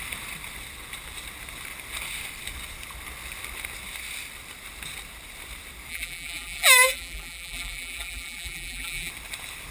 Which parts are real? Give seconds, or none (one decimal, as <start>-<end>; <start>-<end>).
0.0-5.9; 9.1-9.7